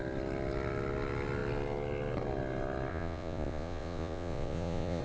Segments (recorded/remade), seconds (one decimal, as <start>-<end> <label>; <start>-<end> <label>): 0.0-2.9 recorded; 2.9-5.0 remade